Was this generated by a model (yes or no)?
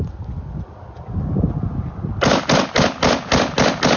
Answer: no